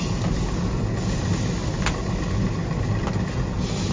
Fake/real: real